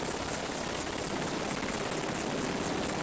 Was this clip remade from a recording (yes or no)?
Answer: no